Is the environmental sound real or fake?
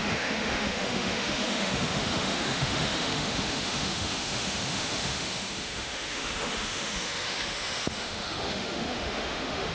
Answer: fake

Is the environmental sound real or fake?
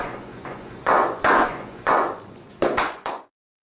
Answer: fake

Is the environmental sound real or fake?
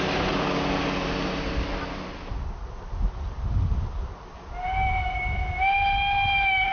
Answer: real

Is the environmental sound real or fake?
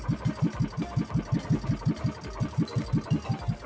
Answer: real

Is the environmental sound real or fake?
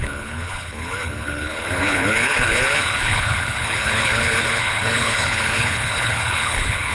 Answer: fake